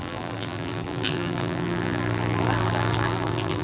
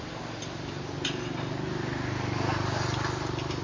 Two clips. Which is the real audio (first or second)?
second